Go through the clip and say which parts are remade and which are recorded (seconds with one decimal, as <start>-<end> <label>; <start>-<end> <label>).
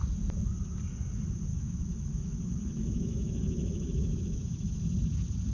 0.0-1.5 recorded; 1.5-4.8 remade; 4.8-5.5 recorded